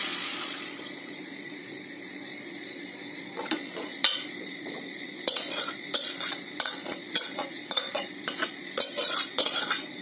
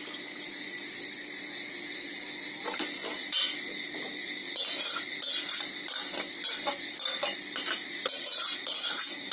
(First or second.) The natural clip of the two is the second